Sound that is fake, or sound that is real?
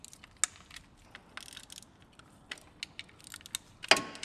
real